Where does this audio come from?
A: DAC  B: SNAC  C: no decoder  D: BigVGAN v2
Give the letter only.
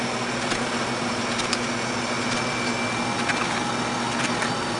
C